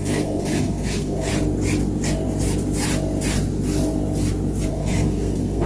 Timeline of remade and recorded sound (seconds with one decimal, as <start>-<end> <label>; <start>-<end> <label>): 0.0-1.3 remade; 1.3-4.7 recorded; 4.7-5.7 remade